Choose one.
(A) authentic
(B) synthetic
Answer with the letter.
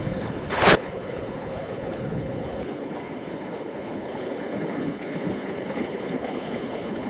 B